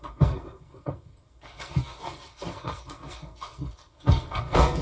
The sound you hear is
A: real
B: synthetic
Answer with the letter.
B